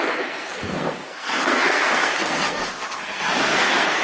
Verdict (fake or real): fake